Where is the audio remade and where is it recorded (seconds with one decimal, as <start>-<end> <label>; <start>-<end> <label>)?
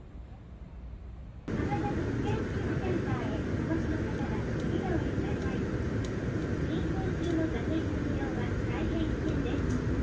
0.0-1.7 recorded; 1.7-3.2 remade; 3.2-10.0 recorded